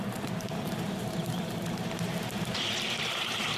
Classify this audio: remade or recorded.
remade